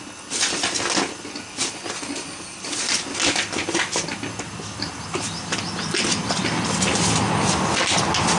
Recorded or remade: recorded